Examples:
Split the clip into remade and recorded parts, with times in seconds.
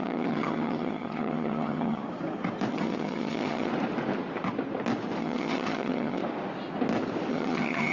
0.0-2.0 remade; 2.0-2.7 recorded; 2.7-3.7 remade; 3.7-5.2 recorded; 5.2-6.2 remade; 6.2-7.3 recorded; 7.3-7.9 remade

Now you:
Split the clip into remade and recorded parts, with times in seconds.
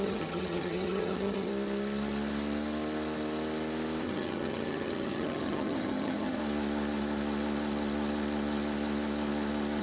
0.0-1.5 remade; 1.5-4.0 recorded; 4.0-6.4 remade; 6.4-9.8 recorded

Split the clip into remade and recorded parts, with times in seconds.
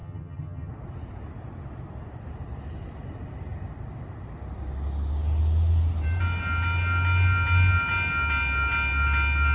0.0-0.7 remade; 0.7-9.5 recorded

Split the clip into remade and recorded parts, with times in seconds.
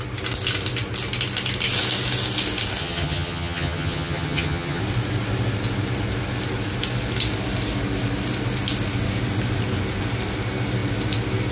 0.0-2.8 recorded; 2.8-4.8 remade; 4.8-11.5 recorded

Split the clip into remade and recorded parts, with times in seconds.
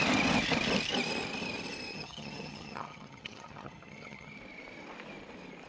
0.0-1.9 recorded; 1.9-4.4 remade; 4.4-5.7 recorded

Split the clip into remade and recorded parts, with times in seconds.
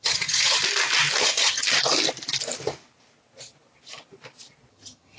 0.0-0.6 remade; 0.6-1.2 recorded; 1.2-1.6 remade; 1.6-4.7 recorded; 4.7-5.2 remade